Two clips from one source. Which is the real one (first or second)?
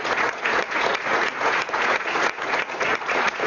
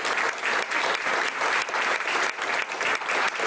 second